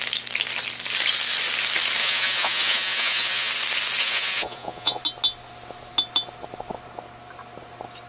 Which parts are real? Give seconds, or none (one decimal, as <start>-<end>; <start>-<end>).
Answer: 0.0-2.0; 3.5-4.0; 5.0-8.1